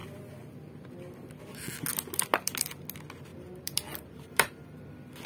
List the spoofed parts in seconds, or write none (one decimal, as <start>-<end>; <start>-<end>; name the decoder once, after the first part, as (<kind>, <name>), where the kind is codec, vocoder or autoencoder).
3.3-4.8 (vocoder, BigVGAN v2)